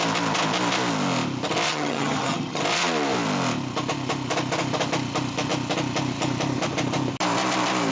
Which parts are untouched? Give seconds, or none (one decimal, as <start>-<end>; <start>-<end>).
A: 0.0-1.7; 2.6-7.9